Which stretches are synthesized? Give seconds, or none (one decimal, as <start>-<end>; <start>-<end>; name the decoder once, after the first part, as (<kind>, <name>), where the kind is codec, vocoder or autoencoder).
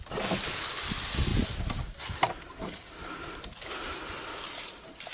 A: none